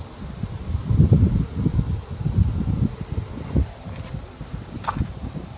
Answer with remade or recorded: recorded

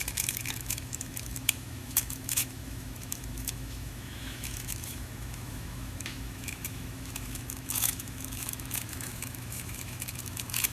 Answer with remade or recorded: remade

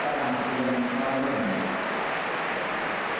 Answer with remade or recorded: recorded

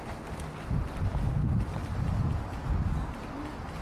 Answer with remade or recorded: recorded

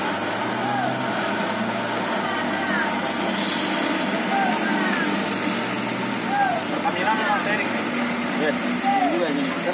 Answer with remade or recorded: recorded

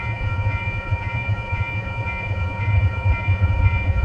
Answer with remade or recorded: remade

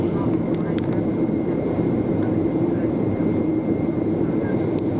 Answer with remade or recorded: remade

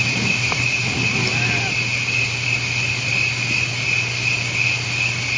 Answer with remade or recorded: recorded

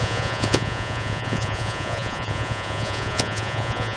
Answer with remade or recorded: remade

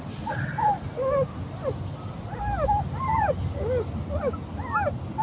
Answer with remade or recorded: recorded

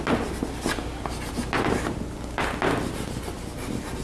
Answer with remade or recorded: recorded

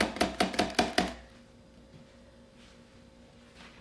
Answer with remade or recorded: recorded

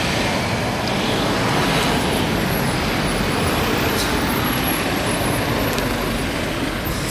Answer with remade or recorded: recorded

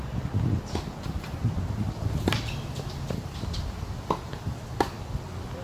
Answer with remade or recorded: recorded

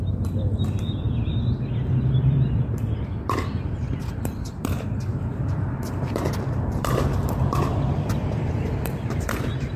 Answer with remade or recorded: remade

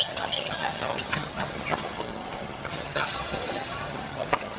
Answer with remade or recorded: remade